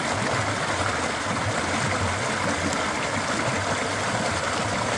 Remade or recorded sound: recorded